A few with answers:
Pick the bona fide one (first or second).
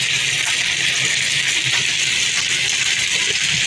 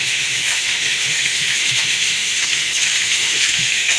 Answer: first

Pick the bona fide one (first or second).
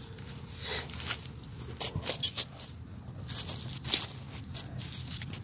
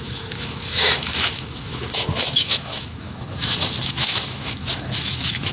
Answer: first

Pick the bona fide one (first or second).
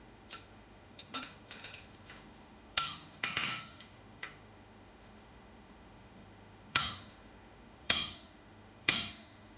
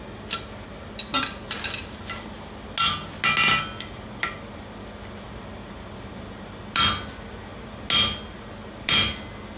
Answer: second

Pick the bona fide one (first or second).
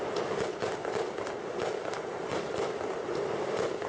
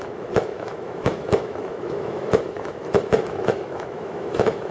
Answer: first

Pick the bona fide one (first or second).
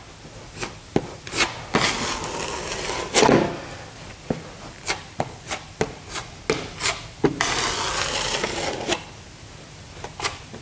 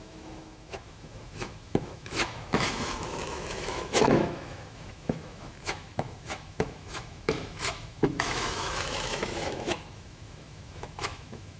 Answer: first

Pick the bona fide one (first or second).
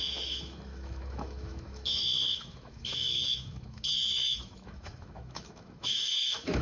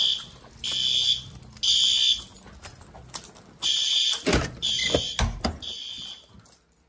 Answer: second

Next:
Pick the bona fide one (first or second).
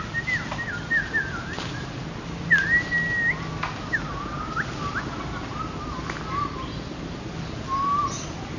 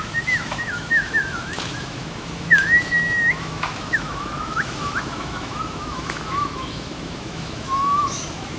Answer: first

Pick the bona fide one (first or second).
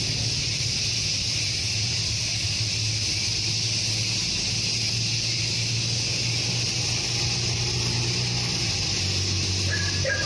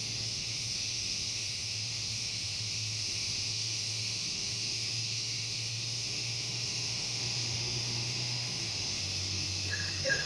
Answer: first